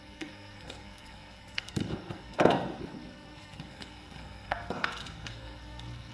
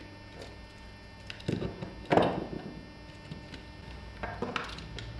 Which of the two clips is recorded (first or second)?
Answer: second